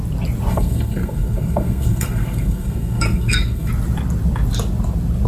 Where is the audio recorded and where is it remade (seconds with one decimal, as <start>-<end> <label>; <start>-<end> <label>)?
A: 0.0-0.5 recorded; 0.5-3.7 remade; 3.7-5.3 recorded